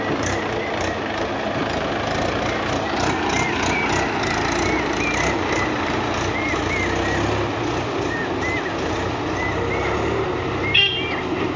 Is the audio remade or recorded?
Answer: recorded